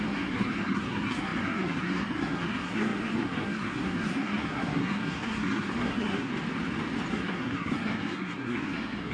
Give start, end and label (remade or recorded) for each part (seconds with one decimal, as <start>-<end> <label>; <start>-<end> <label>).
0.0-6.3 remade; 6.3-7.1 recorded; 7.1-9.1 remade